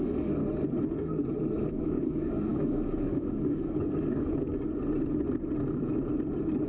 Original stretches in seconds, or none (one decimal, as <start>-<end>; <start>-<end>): 0.4-1.7; 4.5-6.7

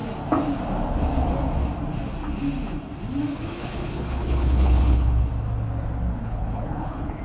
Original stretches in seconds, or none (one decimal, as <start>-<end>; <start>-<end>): 0.0-3.3; 5.3-6.2